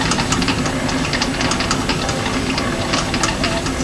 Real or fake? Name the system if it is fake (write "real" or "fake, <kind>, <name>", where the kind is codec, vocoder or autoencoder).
real